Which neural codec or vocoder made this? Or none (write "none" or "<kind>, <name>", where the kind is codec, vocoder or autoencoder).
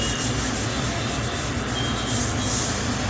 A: none